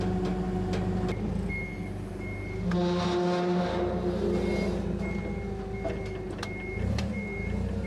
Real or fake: real